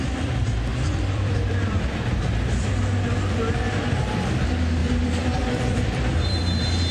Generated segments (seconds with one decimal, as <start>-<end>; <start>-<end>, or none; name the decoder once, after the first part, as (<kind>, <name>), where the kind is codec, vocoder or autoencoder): 0.7-2.2 (vocoder, BigVGAN v2); 4.8-6.4